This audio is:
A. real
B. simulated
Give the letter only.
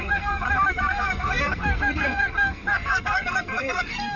B